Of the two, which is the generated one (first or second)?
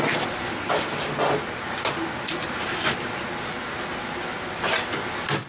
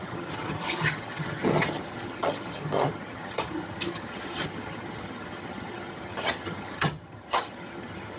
second